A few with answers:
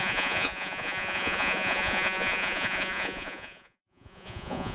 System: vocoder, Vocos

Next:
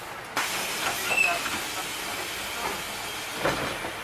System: none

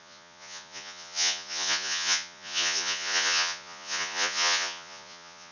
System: vocoder, Vocos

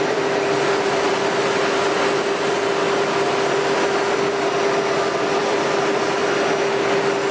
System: none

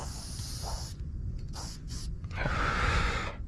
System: vocoder, Vocos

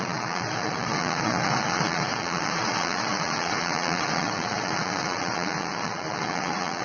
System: vocoder, Vocos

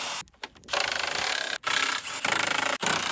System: none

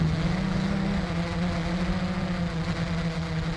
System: none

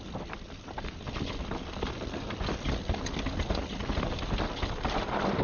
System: none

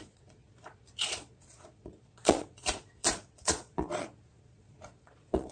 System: vocoder, Vocos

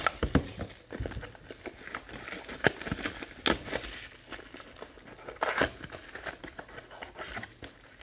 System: none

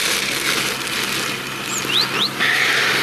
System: none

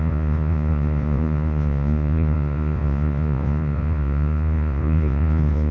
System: vocoder, Vocos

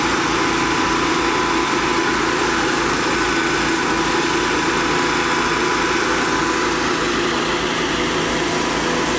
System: none